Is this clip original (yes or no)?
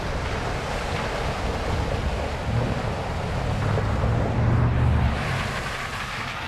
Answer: yes